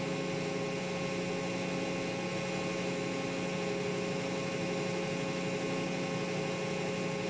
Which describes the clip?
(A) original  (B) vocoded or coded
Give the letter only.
A